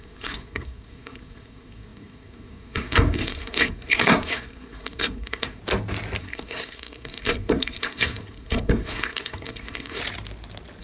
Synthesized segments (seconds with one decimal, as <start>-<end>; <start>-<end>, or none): 0.0-5.6; 6.2-10.0